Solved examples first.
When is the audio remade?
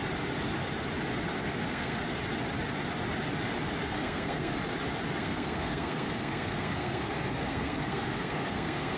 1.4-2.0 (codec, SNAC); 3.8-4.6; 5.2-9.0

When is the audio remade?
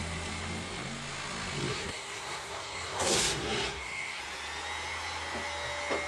1.7-4.2 (codec, SNAC)